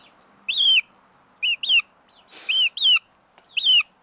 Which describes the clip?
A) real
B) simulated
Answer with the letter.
A